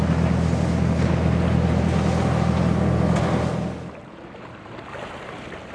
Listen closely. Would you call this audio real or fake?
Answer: real